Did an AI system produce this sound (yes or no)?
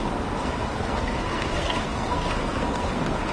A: yes